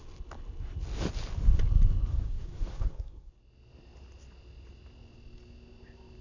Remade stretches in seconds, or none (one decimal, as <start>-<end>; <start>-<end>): 2.1-3.3

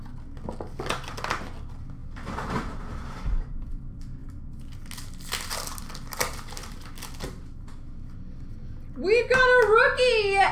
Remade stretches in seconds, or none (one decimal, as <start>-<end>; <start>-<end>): 2.0-3.7; 6.6-7.7

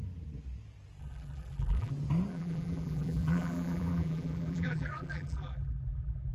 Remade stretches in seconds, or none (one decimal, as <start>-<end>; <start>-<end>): 1.0-1.9; 2.3-6.3

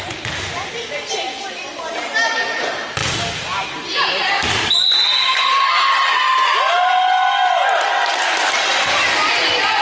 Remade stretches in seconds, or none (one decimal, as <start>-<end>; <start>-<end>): 3.0-4.3; 5.2-5.7; 8.7-9.3

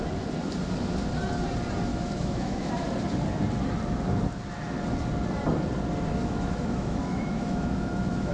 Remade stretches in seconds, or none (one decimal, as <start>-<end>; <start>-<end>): 1.9-2.7; 6.2-8.3

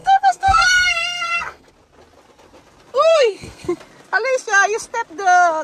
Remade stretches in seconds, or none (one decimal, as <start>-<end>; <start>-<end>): 0.0-1.7; 3.1-3.8

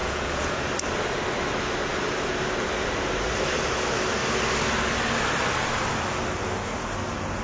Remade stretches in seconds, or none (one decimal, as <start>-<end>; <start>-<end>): 0.0-0.5